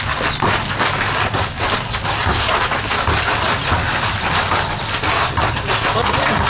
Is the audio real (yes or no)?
yes